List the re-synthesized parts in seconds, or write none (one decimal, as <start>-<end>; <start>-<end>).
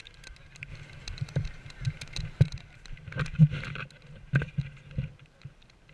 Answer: 0.0-0.7; 2.4-3.4; 5.1-5.9